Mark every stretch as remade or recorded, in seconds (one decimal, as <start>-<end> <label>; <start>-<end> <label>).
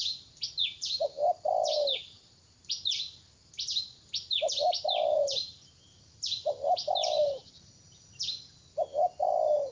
0.0-9.7 recorded